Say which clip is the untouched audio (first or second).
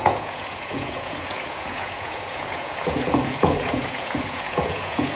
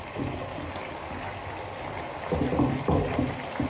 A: second